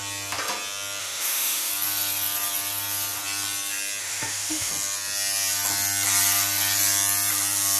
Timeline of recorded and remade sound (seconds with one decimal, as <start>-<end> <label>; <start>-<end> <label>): 0.0-1.0 recorded; 1.0-1.7 remade; 1.7-4.0 recorded; 4.0-4.7 remade; 4.7-7.8 recorded